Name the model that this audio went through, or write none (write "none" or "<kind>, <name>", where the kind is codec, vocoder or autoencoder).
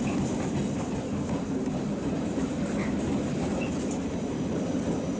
none